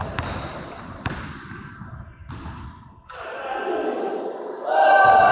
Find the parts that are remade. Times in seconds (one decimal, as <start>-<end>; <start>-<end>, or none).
0.5-1.1